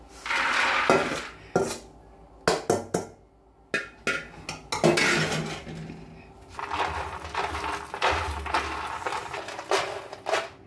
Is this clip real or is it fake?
real